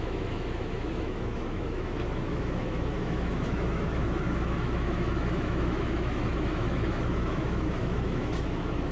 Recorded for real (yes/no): no